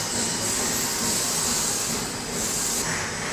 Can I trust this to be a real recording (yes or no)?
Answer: yes